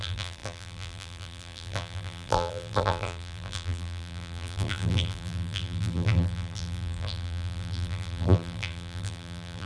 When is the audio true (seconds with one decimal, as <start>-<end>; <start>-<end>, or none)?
none